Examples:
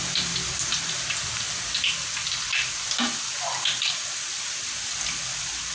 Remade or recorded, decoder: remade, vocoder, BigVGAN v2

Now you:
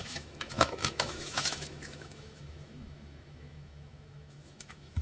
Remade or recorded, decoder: remade, autoencoder, DAC-VAE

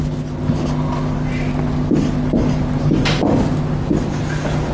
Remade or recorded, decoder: recorded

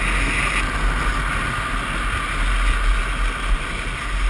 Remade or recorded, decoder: recorded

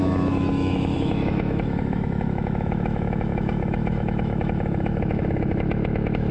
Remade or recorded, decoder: remade, autoencoder, DAC-VAE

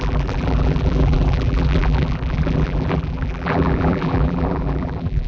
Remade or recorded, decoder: remade, vocoder, BigVGAN v2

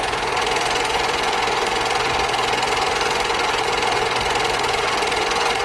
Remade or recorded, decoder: remade, vocoder, Vocos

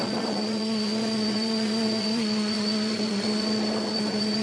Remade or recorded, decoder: remade, vocoder, Vocos